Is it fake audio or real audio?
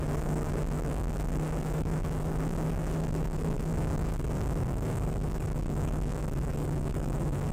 fake